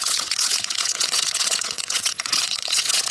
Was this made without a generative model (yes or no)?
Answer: no